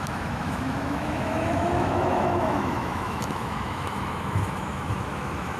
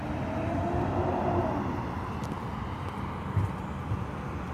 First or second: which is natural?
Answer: second